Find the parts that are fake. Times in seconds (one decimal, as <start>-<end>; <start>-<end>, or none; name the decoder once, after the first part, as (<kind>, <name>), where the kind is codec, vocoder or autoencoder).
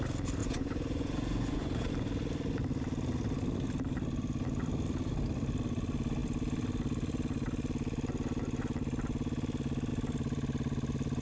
0.4-1.9 (vocoder, Vocos)